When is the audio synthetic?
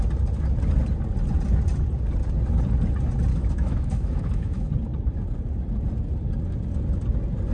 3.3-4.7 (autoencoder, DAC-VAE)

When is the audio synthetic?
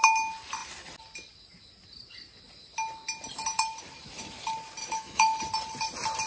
4.8-5.4 (autoencoder, DAC-VAE)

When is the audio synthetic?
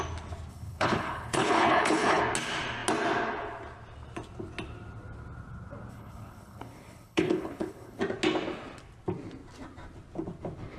0.5-2.2 (codec, HILCodec); 5.9-8.0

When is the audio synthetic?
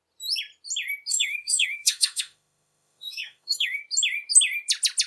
1.1-3.8 (autoencoder, DAC-VAE)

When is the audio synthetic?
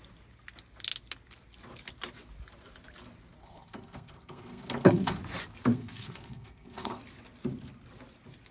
3.4-5.2 (codec, SNAC); 5.7-7.0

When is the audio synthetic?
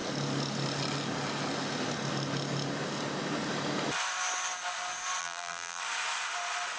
5.2-5.8 (vocoder, BigVGAN v2)